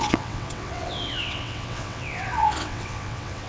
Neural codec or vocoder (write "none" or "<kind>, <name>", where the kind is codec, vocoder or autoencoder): vocoder, WaveNeXt